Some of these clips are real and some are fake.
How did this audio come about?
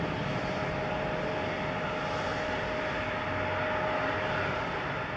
real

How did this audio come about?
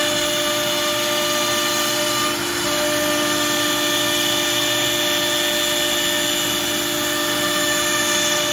real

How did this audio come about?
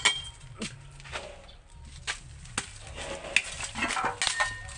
real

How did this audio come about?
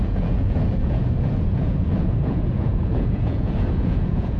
fake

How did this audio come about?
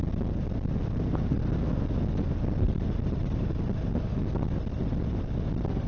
real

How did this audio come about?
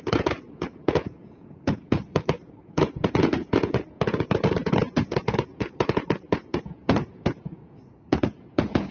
fake